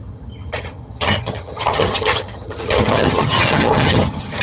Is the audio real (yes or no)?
no